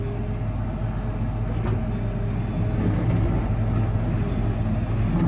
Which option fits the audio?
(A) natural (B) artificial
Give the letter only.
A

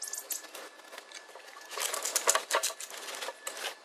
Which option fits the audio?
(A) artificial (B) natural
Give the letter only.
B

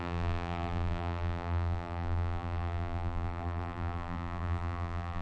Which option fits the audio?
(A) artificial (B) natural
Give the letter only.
A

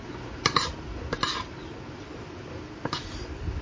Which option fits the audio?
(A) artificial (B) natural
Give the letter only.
B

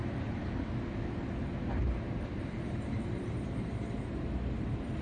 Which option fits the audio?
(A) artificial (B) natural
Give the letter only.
A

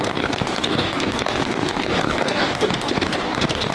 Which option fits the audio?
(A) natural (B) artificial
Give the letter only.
B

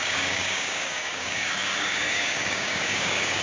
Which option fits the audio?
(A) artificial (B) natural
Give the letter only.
A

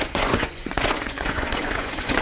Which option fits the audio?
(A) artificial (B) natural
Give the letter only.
A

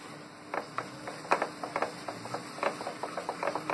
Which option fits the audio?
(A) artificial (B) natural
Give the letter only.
B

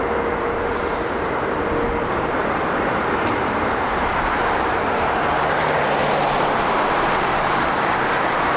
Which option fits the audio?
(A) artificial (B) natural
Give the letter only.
A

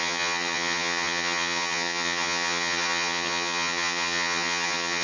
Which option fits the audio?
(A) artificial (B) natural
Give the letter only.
A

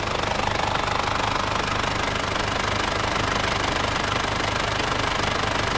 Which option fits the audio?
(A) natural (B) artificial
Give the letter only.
A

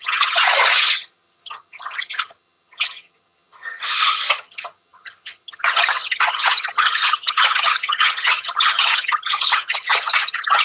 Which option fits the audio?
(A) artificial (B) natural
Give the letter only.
A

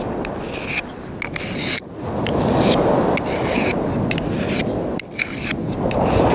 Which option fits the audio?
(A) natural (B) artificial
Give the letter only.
A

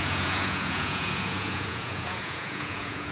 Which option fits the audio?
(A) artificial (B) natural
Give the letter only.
A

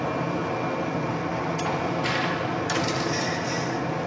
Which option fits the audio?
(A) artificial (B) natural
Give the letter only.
B